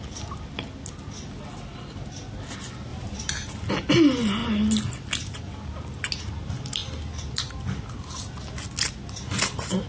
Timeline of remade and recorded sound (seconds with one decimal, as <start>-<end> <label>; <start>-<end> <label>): 0.0-2.9 recorded; 2.9-3.7 remade; 3.7-9.9 recorded